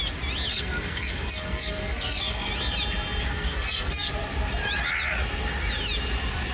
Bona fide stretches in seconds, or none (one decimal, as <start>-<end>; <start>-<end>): 0.0-0.5; 2.5-3.2; 4.1-6.5